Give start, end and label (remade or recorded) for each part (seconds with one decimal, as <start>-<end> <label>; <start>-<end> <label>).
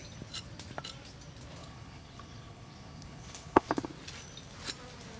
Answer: 0.0-1.6 recorded; 1.6-3.7 remade; 3.7-5.2 recorded